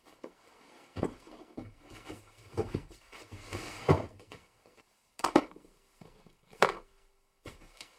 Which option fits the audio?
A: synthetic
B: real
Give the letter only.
A